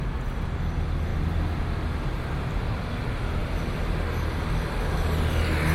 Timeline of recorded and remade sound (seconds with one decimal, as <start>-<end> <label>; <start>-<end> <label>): 0.0-5.7 recorded